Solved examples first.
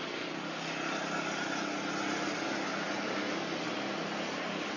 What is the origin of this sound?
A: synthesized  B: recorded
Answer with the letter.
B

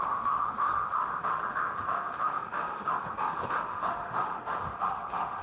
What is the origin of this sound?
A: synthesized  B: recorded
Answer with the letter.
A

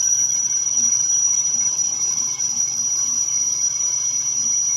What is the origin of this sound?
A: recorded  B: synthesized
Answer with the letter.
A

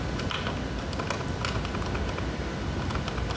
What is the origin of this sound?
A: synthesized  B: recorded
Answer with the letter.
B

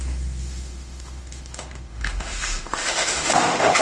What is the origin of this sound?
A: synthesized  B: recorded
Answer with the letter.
A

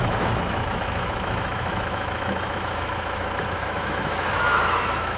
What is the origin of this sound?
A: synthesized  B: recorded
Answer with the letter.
A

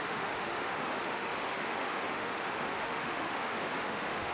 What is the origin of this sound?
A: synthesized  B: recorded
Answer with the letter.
A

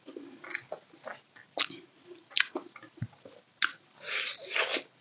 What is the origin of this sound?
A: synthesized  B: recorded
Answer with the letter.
B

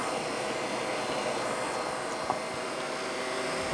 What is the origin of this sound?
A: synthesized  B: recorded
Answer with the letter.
B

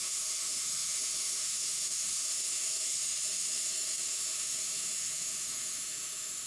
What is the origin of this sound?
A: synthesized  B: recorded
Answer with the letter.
A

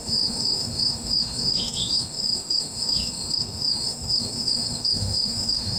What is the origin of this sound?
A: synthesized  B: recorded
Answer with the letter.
A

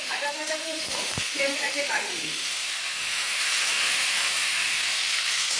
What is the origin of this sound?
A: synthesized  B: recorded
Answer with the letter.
A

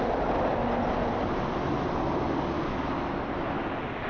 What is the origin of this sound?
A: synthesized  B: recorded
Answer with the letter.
B